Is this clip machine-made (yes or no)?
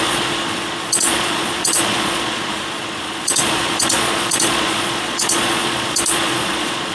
yes